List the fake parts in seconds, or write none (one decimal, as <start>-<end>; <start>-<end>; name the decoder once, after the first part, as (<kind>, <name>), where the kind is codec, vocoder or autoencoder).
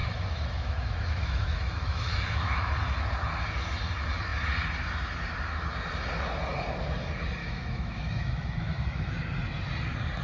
0.0-2.7 (autoencoder, DAC-VAE); 7.4-9.1